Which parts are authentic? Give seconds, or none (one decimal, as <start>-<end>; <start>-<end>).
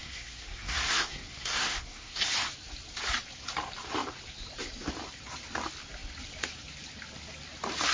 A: 2.2-7.9